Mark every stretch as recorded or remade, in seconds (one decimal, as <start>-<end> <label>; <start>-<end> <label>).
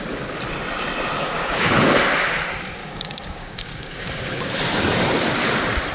0.0-1.2 recorded; 1.2-1.9 remade; 1.9-2.8 recorded; 2.8-4.5 remade; 4.5-5.9 recorded